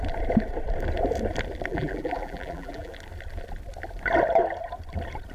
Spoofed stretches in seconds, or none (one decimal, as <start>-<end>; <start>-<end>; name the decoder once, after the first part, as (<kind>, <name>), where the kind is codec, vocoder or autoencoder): 1.7-2.9 (vocoder, BigVGAN v2)